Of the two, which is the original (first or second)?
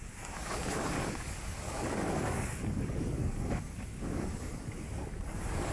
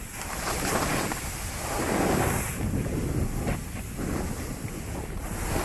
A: second